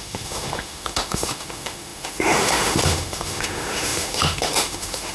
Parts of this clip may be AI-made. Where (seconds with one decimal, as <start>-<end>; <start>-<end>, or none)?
0.0-5.1